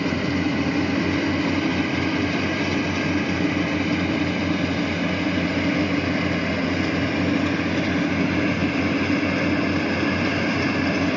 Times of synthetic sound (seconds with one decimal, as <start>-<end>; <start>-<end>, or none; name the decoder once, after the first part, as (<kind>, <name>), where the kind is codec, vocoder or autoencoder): none

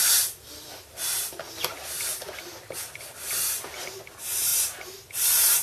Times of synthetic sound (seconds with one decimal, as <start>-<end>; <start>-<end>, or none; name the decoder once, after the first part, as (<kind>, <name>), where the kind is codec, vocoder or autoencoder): 0.0-1.2 (vocoder, BigVGAN v2)

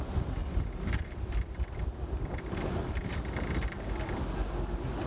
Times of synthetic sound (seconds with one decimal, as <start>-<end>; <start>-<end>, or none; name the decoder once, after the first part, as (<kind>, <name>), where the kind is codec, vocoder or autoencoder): 0.4-3.1 (vocoder, BigVGAN v2)

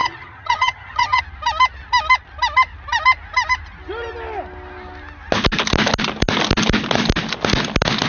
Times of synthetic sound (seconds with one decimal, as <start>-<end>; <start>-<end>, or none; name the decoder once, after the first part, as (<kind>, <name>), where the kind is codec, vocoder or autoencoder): 0.0-1.2 (vocoder, HiFi-GAN)

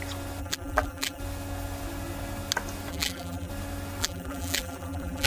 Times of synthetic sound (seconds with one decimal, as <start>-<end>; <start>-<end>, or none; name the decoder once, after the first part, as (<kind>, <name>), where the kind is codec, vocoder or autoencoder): 0.4-1.2 (vocoder, BigVGAN v2); 2.9-3.5; 4.0-5.3

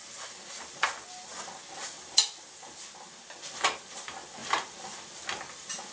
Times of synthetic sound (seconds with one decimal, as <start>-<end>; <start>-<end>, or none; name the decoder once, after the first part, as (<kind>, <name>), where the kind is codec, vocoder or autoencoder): none

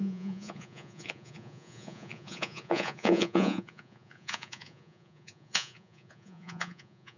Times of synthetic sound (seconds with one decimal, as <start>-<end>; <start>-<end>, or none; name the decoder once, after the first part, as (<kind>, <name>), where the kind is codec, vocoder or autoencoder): 0.0-7.2 (vocoder, Vocos)